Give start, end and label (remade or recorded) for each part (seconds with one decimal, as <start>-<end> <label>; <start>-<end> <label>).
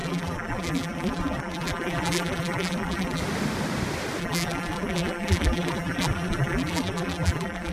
0.0-3.2 remade; 3.2-4.2 recorded; 4.2-7.7 remade